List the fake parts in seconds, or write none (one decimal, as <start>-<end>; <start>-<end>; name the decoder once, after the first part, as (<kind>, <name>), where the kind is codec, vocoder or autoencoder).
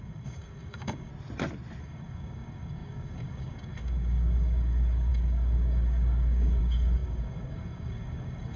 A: 0.0-1.1 (codec, DAC); 1.8-8.6